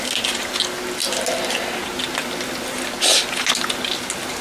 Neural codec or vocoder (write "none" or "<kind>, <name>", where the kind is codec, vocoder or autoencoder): none